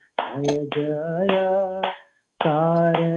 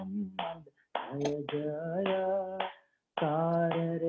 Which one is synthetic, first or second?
first